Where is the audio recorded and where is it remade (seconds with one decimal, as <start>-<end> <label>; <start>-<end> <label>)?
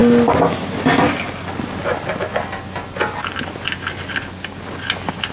0.0-5.3 recorded